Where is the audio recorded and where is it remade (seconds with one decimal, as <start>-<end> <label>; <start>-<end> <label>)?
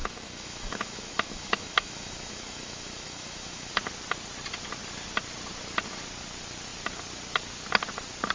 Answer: 0.0-3.7 remade; 3.7-8.3 recorded